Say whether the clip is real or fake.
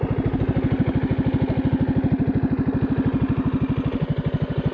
real